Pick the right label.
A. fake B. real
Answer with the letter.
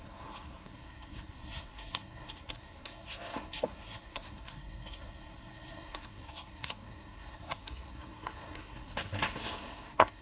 A